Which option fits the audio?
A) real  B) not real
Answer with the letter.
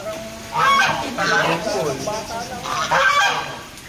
A